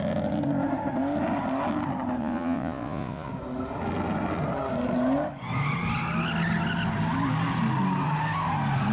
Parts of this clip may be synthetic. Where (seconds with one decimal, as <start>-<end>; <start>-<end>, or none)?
2.2-3.3